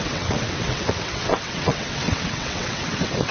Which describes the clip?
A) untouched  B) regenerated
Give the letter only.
B